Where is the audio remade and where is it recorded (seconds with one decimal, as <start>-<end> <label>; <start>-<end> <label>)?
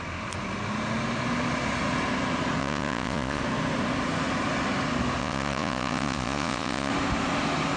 0.0-2.6 recorded; 2.6-3.4 remade; 3.4-5.2 recorded; 5.2-6.9 remade; 6.9-7.8 recorded